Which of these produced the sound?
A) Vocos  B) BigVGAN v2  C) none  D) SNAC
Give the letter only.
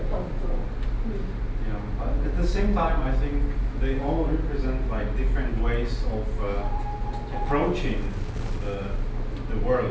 C